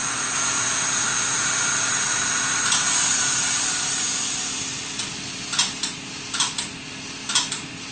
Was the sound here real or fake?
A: real